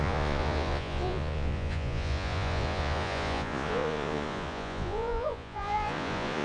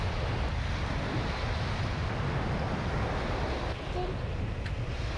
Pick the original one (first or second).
second